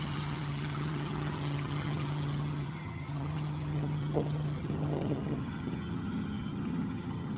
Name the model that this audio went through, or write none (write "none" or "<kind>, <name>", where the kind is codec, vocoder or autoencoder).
vocoder, HiFi-GAN